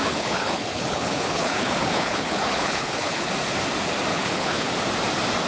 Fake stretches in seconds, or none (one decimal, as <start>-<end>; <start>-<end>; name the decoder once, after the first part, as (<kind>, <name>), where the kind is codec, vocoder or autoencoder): 0.0-3.3 (codec, HILCodec); 4.1-4.7